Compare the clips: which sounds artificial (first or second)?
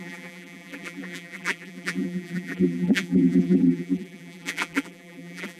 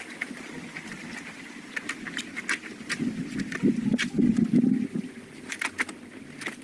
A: first